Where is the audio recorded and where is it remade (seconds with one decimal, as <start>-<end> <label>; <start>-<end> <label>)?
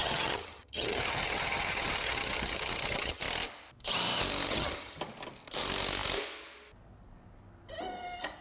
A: 0.0-3.2 remade; 3.2-4.5 recorded; 4.5-5.0 remade; 5.0-8.4 recorded